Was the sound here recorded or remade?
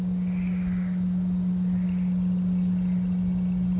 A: recorded